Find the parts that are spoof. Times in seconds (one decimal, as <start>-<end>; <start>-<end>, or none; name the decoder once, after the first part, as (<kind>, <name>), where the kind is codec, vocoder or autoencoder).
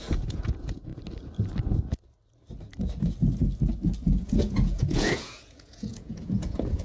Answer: 0.0-0.9 (vocoder, Vocos); 4.2-6.8